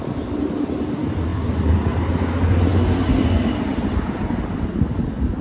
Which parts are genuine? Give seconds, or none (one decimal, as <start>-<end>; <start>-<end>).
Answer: 0.0-5.4